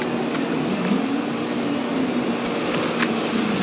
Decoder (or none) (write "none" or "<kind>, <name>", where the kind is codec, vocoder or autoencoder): none